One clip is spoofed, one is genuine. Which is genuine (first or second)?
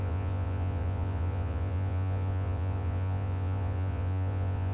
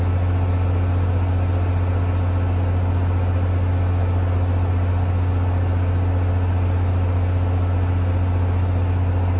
second